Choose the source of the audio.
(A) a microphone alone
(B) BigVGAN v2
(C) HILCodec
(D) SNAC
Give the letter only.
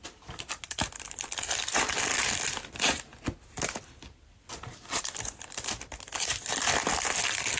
A